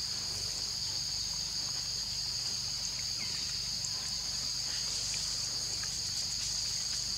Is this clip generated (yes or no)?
no